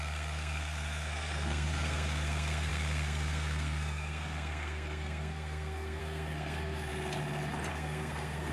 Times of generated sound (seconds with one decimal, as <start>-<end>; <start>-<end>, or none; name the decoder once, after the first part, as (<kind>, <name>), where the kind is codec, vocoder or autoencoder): 0.0-6.9 (codec, SNAC); 7.7-8.5

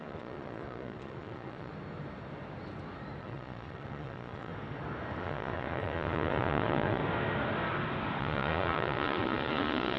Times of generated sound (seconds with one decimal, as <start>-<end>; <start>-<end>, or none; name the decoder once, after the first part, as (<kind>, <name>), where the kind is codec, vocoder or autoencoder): 0.0-1.7 (vocoder, Vocos); 3.2-4.5; 5.2-7.0; 8.2-10.0

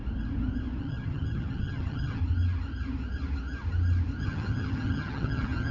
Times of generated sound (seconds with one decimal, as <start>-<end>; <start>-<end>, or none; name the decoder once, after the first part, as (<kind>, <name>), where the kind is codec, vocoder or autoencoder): 0.8-2.2 (vocoder, HiFi-GAN); 4.2-5.7

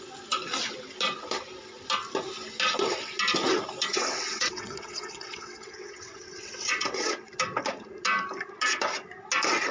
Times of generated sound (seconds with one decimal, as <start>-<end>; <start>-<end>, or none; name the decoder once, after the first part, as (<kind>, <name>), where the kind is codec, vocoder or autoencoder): 3.9-7.3 (vocoder, WaveNeXt)

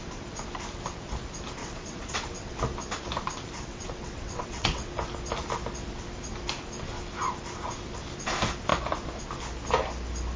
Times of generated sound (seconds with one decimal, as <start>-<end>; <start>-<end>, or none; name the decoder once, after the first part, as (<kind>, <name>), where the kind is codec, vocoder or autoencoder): 1.6-2.6 (vocoder, WaveNeXt); 3.7-4.9

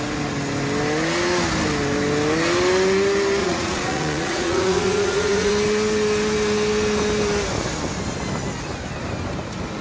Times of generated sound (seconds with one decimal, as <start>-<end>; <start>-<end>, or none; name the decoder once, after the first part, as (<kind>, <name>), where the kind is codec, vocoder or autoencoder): 3.4-5.5 (vocoder, Vocos)

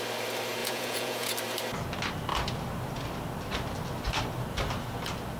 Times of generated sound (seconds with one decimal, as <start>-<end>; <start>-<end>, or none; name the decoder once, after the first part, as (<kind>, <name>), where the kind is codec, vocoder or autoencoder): 0.6-1.3 (vocoder, Vocos)

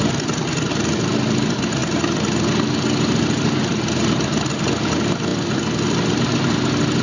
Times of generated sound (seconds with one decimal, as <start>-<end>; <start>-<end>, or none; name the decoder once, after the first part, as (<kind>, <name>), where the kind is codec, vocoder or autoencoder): none